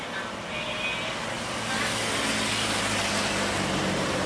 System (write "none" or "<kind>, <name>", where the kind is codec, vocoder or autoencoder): none